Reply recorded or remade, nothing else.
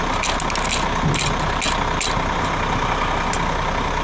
recorded